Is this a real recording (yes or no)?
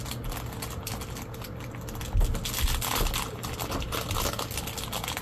yes